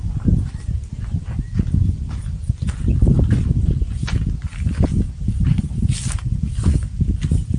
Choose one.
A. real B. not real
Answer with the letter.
A